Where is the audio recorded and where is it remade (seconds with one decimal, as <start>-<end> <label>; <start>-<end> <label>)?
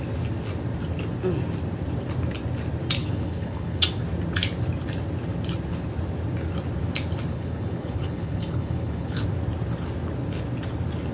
0.0-3.0 recorded; 3.0-3.8 remade; 3.8-7.3 recorded; 7.3-9.2 remade; 9.2-11.1 recorded